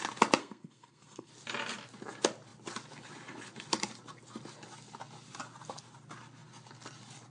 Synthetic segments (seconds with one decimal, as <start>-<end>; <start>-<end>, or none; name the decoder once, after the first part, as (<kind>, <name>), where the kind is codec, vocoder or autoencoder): 0.4-1.3 (codec, SNAC)